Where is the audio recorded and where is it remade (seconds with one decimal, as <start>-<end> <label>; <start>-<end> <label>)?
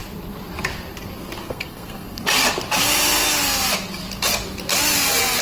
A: 0.0-1.4 recorded; 1.4-2.2 remade; 2.2-5.4 recorded